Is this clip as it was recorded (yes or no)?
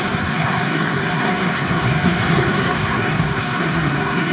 no